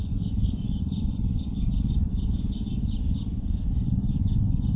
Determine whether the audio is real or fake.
fake